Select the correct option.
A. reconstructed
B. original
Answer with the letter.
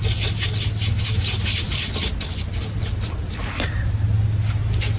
B